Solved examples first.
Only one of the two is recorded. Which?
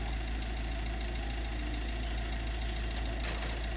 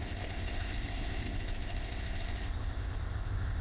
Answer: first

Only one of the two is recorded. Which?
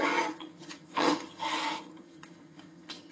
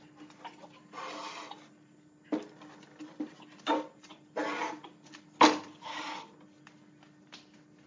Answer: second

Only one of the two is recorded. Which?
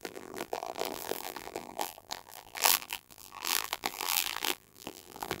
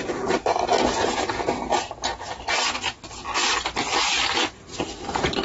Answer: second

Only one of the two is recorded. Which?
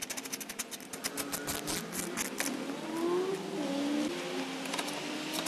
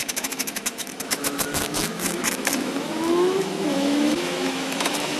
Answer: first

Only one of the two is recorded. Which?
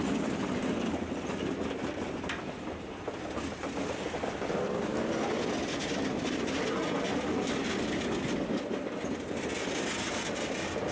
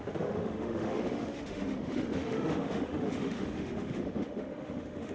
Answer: first